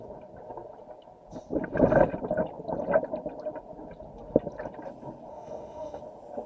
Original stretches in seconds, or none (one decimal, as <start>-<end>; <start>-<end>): 0.0-5.3; 6.0-6.5